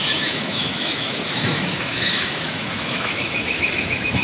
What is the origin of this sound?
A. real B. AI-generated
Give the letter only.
B